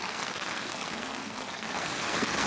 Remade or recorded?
remade